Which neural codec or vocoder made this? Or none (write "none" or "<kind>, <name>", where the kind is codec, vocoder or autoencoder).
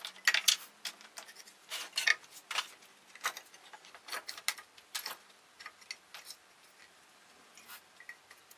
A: none